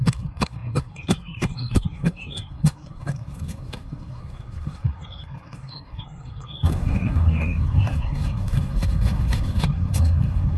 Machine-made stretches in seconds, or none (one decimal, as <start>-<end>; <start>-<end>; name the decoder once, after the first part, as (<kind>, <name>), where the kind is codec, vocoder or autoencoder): 0.0-10.6 (codec, SNAC)